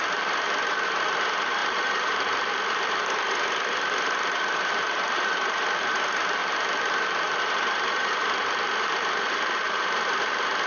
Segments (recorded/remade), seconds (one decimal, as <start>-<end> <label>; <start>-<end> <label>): 0.0-6.4 remade; 6.4-7.4 recorded; 7.4-10.7 remade